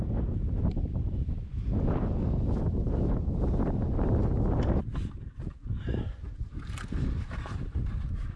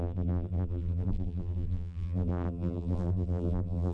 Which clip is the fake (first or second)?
second